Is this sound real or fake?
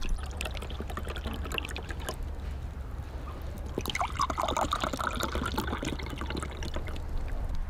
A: real